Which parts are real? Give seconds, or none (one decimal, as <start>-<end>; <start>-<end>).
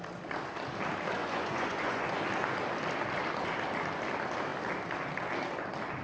0.0-1.2; 2.2-6.0